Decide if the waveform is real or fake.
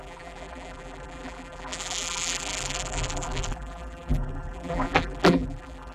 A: fake